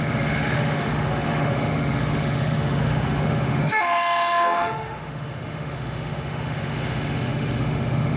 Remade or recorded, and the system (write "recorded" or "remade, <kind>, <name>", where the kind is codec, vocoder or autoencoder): remade, autoencoder, DAC-VAE